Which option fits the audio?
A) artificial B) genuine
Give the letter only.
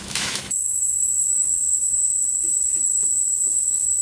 A